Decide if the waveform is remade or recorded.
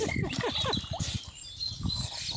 recorded